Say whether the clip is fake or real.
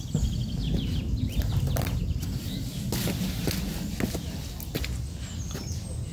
real